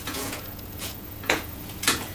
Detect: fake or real fake